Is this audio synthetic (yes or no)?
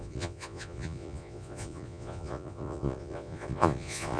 yes